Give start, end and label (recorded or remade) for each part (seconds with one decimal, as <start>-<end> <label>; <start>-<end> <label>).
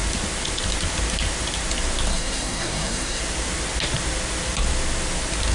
0.0-2.1 recorded; 2.1-3.2 remade; 3.2-5.5 recorded